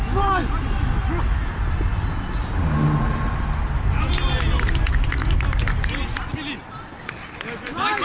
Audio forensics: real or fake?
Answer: real